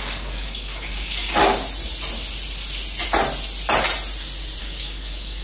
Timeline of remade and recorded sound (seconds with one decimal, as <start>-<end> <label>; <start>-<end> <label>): 0.0-1.4 remade; 1.4-4.6 recorded; 4.6-5.4 remade